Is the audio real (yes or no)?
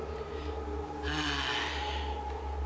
yes